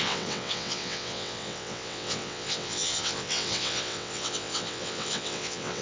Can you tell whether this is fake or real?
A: fake